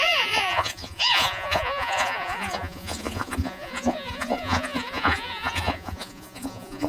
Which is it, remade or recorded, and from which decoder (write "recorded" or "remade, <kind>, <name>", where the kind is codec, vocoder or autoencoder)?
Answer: remade, vocoder, Vocos